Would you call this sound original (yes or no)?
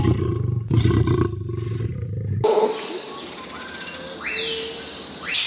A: yes